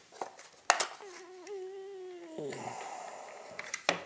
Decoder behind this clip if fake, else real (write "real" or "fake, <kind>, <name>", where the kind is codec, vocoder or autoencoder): real